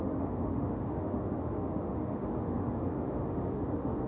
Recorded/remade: remade